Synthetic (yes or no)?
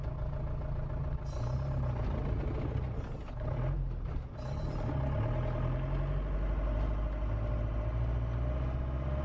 no